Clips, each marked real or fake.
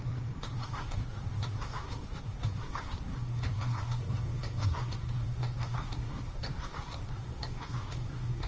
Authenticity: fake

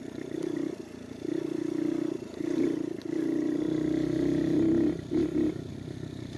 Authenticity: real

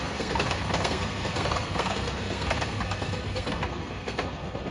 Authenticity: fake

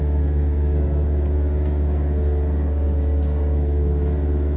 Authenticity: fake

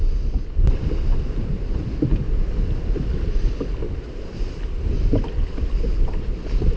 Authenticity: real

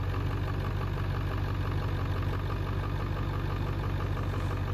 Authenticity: real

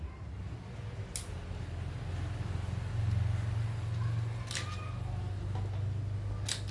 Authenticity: real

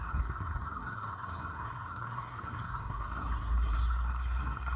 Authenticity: fake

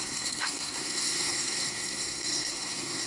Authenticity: fake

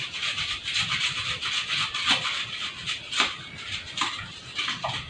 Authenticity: real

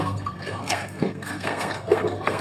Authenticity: fake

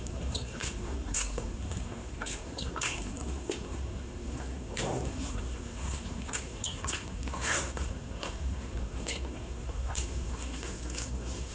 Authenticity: fake